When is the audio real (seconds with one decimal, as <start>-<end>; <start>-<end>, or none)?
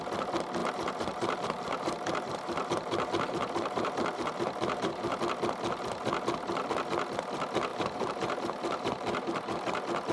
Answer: 0.0-0.6; 5.2-7.7; 9.6-10.1